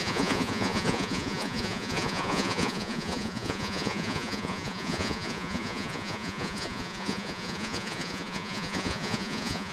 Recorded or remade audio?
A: remade